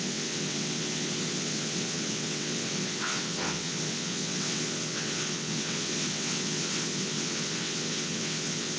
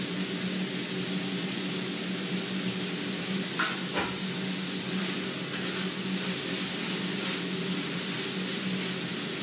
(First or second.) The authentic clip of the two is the second